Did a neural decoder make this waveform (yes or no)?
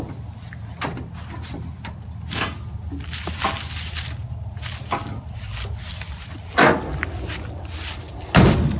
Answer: no